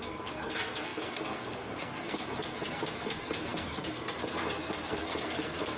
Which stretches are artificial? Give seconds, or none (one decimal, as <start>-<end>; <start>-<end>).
0.0-5.8